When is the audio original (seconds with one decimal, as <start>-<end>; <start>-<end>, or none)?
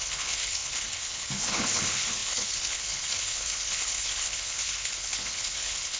none